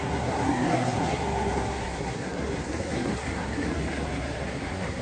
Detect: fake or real fake